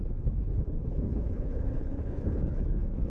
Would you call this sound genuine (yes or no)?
no